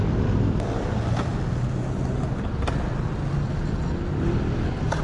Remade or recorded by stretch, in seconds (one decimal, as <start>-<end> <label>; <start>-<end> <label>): 0.0-5.0 recorded